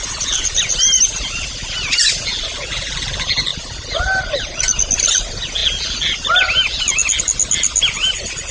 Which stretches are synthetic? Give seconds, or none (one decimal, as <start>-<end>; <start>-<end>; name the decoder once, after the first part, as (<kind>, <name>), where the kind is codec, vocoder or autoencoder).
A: none